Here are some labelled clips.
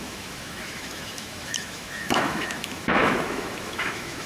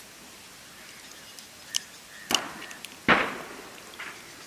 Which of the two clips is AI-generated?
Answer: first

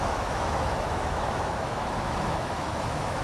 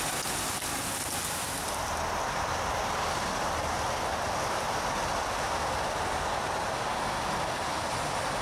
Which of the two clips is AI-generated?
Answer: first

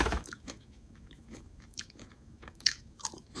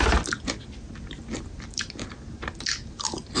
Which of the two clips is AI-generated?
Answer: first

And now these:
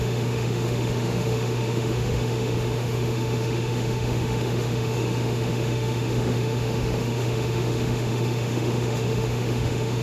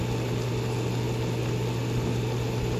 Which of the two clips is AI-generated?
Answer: first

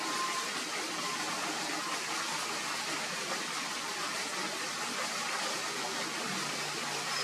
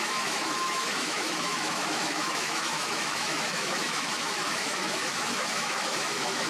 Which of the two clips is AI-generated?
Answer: second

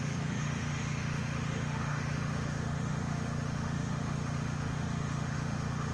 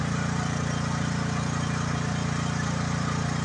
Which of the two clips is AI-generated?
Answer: first